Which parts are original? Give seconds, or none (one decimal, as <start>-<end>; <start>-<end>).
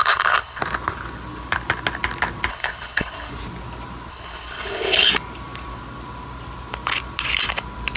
0.6-2.5; 3.3-4.1; 5.1-8.0